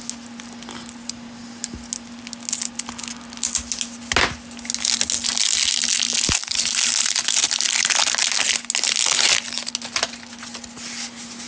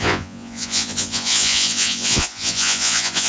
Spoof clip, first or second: second